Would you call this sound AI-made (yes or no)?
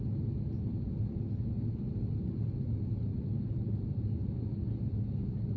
no